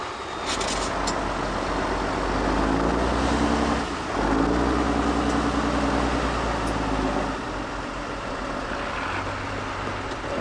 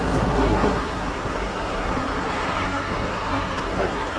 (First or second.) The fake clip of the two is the second